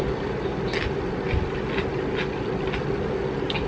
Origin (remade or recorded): recorded